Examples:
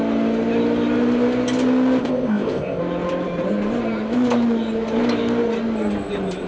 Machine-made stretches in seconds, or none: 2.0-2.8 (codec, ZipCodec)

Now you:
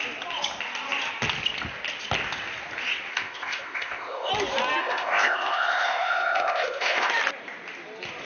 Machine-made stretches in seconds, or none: 3.1-4.3 (codec, ZipCodec); 4.8-7.1

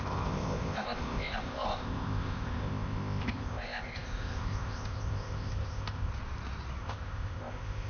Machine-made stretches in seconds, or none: 0.0-6.1 (codec, ZipCodec); 6.8-7.9

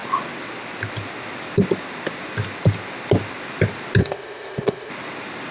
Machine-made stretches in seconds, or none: 4.0-4.9 (codec, ZipCodec)

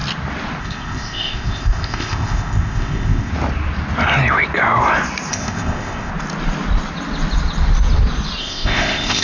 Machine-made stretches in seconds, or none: 0.6-3.3 (codec, ZipCodec); 5.3-6.1; 8.4-9.2

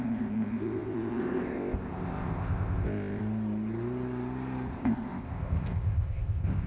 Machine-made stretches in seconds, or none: 0.0-3.2 (codec, ZipCodec); 4.7-6.7

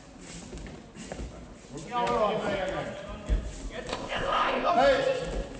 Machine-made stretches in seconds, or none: 3.9-4.7 (codec, ZipCodec)